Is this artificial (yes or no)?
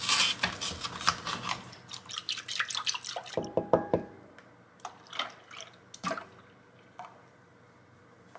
no